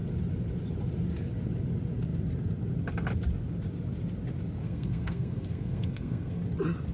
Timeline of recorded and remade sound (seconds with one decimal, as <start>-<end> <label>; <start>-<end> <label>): 0.0-4.6 recorded; 4.6-6.4 remade; 6.4-6.9 recorded

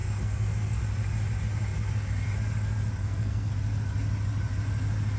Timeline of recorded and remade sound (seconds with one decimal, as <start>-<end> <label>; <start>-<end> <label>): 0.0-0.8 remade; 0.8-3.0 recorded; 3.0-3.5 remade; 3.5-5.2 recorded

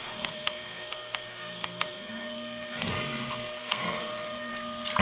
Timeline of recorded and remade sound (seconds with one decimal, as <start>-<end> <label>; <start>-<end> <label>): 0.0-2.9 remade; 2.9-3.6 recorded; 3.6-4.5 remade; 4.5-5.0 recorded

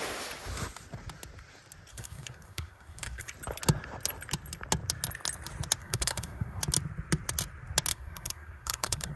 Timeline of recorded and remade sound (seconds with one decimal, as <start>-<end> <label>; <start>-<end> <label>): 0.0-1.9 recorded; 1.9-3.3 remade; 3.3-5.8 recorded; 5.8-6.6 remade; 6.6-7.9 recorded; 7.9-9.2 remade

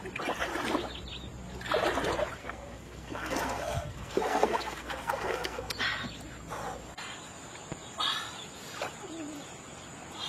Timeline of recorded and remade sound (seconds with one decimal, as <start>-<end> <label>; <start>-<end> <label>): 0.0-2.4 recorded; 2.4-5.7 remade; 5.7-10.3 recorded